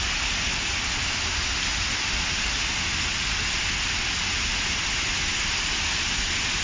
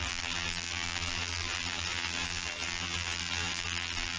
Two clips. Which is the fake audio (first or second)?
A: second